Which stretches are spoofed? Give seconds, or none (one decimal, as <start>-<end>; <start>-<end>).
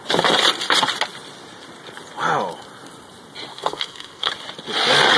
3.5-4.3